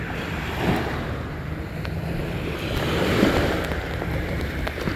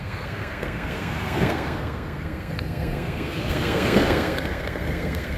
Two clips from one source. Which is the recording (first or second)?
first